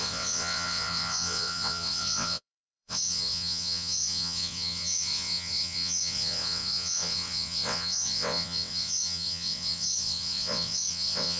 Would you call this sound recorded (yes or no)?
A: no